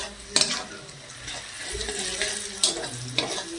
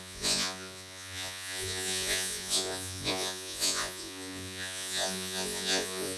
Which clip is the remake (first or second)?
second